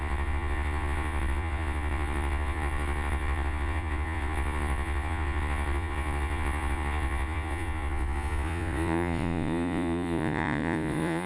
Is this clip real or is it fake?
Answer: fake